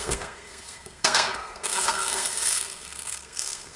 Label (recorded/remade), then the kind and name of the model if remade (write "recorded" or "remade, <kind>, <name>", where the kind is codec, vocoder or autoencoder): remade, codec, SNAC